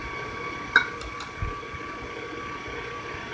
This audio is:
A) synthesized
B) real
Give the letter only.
A